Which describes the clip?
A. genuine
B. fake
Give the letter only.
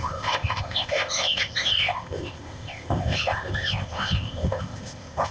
B